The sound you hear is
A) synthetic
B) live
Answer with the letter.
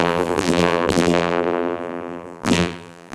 A